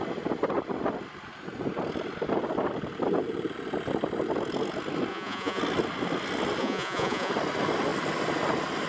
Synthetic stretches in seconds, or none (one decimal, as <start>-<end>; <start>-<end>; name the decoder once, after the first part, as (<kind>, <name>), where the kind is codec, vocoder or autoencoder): 5.1-5.6 (vocoder, Vocos); 6.6-7.3